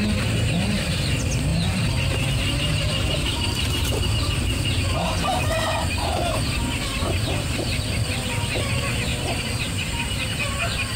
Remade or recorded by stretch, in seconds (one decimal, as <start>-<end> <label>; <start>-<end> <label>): 0.0-1.5 recorded; 1.5-4.1 remade; 4.1-6.9 recorded; 6.9-7.5 remade; 7.5-9.1 recorded; 9.1-10.0 remade; 10.0-11.0 recorded